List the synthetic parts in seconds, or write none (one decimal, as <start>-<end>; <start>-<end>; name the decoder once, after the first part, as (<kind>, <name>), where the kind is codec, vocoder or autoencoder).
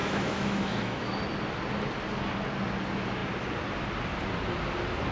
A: 0.0-1.2 (autoencoder, DAC-VAE)